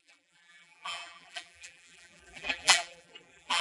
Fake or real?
fake